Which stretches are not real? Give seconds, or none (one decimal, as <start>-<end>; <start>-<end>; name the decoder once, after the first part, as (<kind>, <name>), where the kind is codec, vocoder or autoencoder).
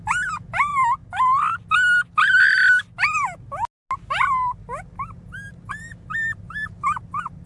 none